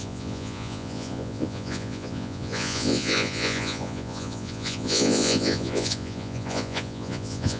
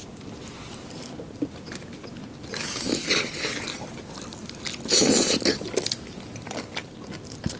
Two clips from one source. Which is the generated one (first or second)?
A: first